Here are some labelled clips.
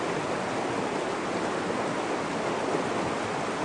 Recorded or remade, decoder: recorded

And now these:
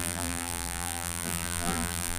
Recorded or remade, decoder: remade, vocoder, BigVGAN v2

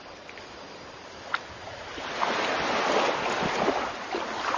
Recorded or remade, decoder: recorded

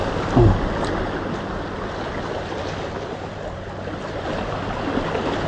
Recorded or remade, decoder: recorded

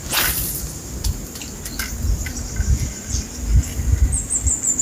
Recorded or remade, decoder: recorded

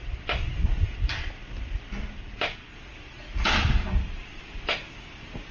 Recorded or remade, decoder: recorded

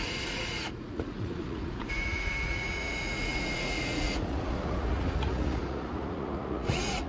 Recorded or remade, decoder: remade, vocoder, Vocos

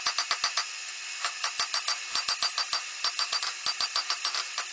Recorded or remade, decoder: recorded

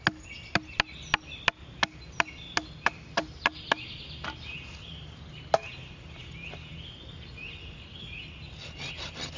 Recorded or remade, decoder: recorded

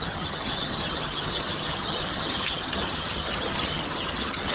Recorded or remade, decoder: remade, vocoder, HiFi-GAN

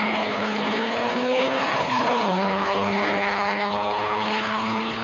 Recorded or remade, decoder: remade, codec, HILCodec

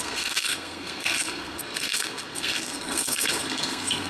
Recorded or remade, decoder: remade, codec, SNAC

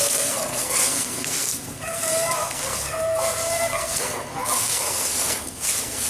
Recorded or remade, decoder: remade, codec, SNAC